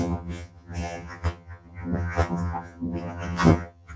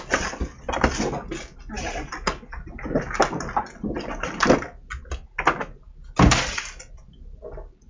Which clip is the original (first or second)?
second